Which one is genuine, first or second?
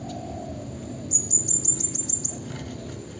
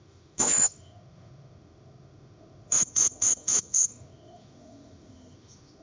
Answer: first